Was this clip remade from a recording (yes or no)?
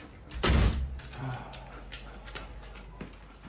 no